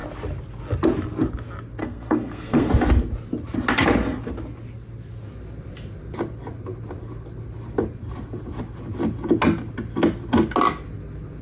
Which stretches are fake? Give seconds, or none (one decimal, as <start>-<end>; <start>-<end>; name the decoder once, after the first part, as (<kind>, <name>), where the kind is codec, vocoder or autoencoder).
1.8-2.7 (codec, SNAC)

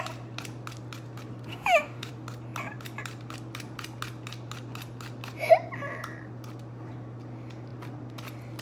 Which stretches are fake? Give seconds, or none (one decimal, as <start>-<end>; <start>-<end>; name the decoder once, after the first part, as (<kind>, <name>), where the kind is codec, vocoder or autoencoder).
1.5-2.1 (autoencoder, DAC-VAE)